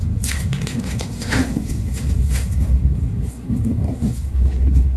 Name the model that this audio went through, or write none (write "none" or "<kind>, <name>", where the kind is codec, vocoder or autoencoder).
codec, SNAC